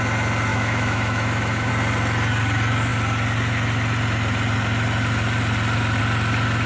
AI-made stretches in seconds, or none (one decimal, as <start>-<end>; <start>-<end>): 0.5-1.7